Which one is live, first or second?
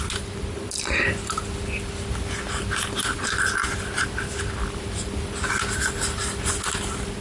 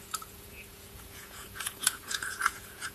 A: first